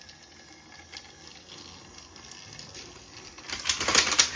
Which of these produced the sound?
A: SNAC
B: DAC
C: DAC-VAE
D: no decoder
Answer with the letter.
D